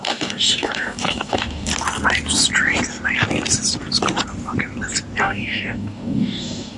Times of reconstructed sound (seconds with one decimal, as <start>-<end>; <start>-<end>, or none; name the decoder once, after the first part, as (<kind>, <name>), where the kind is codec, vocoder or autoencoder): 0.0-1.7 (codec, DAC); 5.2-6.8